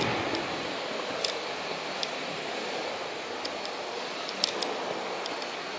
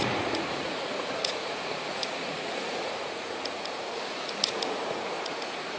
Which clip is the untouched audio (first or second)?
first